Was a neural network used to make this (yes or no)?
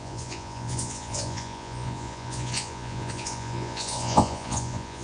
yes